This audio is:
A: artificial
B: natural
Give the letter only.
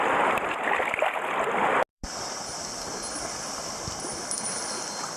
B